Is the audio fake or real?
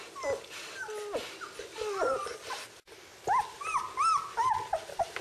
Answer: real